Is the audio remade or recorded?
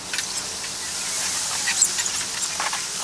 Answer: recorded